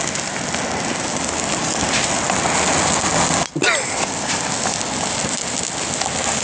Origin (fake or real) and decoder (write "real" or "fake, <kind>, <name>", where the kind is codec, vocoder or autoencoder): real